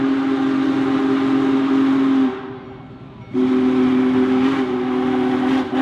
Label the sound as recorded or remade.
recorded